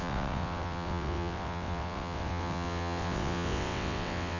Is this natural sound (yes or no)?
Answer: no